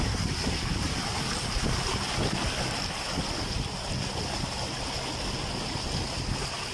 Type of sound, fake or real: real